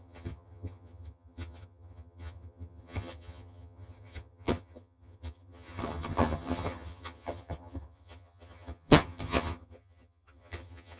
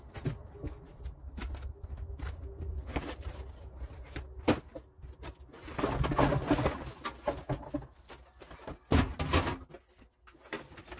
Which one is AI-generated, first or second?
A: first